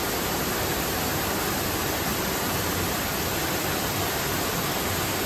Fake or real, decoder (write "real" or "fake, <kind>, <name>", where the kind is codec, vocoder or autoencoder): real